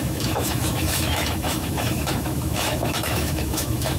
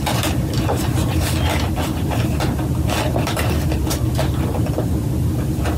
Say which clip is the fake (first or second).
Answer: first